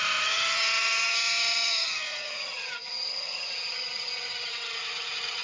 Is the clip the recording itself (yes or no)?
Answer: no